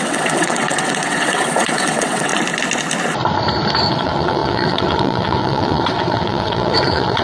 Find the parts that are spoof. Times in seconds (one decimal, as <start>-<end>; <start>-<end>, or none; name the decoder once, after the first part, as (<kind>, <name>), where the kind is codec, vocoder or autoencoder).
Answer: 0.0-2.3 (vocoder, WaveNeXt); 3.9-7.2